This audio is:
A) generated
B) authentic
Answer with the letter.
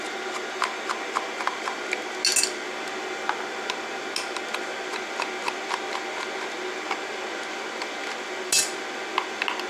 B